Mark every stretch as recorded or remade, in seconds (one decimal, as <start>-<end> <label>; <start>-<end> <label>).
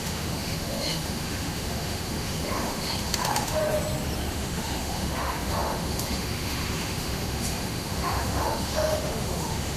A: 0.0-3.6 remade; 3.6-4.3 recorded; 4.3-9.8 remade